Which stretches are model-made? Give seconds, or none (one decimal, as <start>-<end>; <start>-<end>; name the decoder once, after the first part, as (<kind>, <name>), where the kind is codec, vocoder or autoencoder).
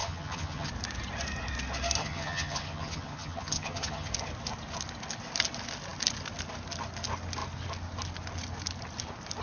0.0-0.7 (vocoder, HiFi-GAN); 2.0-4.1